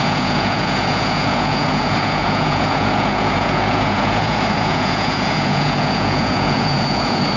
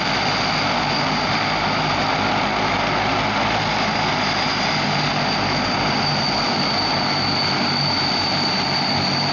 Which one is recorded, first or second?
second